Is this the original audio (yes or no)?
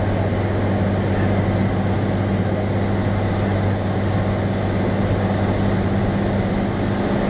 yes